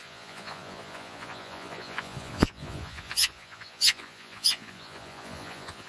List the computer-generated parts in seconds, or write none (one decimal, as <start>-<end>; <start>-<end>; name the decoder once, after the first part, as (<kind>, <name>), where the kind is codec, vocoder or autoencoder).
0.0-5.9 (vocoder, Vocos)